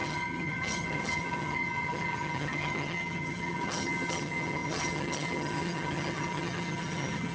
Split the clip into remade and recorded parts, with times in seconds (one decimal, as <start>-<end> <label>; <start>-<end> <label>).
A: 0.0-7.3 remade